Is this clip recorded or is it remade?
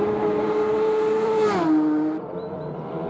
recorded